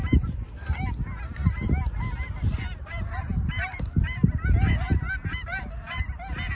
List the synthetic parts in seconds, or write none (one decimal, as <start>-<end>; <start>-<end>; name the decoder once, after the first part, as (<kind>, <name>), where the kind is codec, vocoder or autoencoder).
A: none